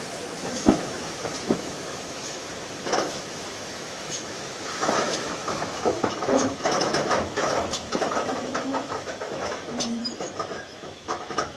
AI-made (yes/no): yes